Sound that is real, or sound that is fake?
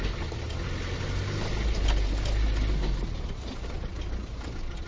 real